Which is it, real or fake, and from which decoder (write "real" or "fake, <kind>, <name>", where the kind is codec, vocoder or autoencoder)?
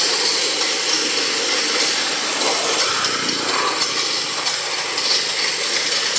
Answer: real